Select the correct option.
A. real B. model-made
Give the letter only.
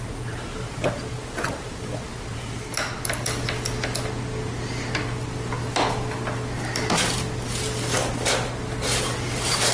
A